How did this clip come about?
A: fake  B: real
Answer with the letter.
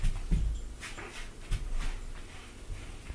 B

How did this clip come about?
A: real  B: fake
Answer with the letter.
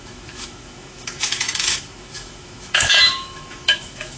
B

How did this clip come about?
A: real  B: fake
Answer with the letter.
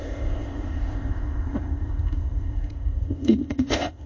B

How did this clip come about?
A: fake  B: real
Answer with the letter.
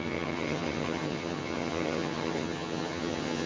A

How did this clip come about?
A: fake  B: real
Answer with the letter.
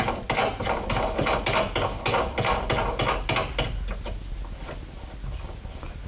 B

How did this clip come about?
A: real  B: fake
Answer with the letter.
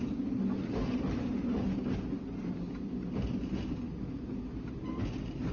A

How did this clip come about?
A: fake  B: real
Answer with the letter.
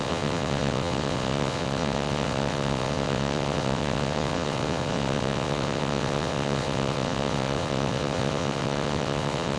A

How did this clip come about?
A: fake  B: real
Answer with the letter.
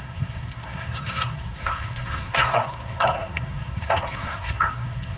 A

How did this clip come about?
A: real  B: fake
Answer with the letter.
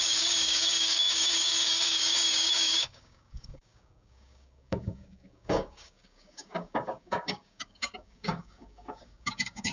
B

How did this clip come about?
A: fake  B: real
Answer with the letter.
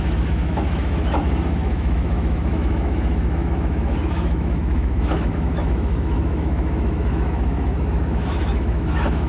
A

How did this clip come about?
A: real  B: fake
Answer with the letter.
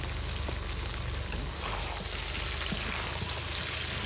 A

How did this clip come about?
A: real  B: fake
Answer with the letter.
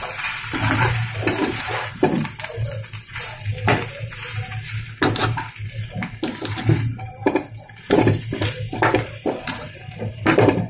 B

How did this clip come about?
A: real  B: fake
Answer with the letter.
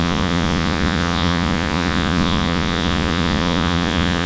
B